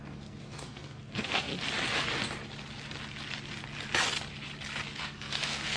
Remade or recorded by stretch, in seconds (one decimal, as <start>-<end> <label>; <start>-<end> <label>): 0.0-1.5 remade; 1.5-5.0 recorded; 5.0-5.8 remade